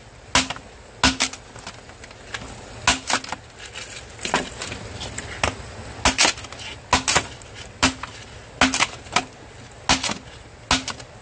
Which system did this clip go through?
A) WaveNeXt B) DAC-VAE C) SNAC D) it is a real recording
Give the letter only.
D